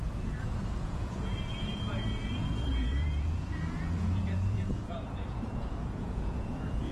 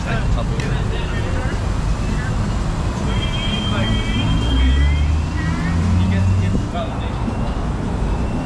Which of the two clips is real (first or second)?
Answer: second